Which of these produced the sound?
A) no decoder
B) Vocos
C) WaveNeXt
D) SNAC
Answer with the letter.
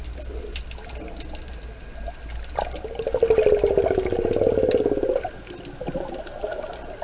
A